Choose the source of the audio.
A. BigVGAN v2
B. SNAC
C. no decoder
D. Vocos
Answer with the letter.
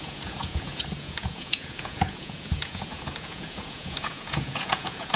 D